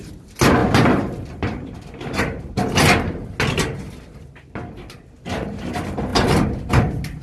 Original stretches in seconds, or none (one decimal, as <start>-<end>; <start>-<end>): 0.0-0.6; 2.6-7.2